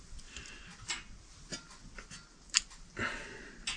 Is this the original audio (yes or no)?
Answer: yes